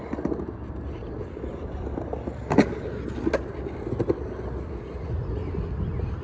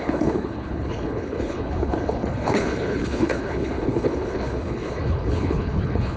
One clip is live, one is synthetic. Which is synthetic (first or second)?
second